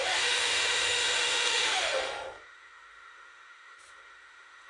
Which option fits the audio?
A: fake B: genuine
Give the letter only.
A